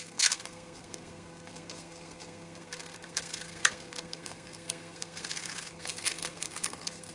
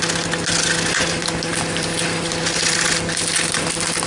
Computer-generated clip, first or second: first